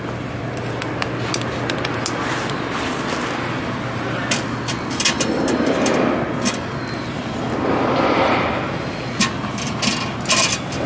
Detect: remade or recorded recorded